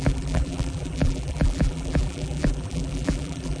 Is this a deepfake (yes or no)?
yes